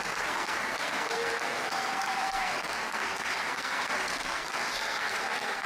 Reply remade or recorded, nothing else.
remade